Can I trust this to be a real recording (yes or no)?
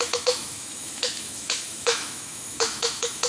no